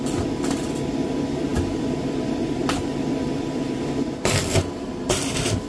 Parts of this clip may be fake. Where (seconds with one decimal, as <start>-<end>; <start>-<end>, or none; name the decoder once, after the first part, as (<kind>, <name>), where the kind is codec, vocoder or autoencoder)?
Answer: 0.0-5.7 (vocoder, BigVGAN v2)